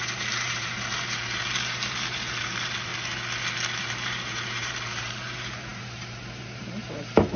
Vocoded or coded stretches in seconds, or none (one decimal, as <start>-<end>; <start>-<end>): 0.0-2.9; 3.8-7.4